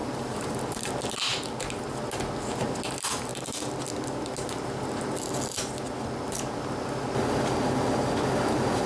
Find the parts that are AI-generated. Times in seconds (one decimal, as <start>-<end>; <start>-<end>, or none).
0.0-0.9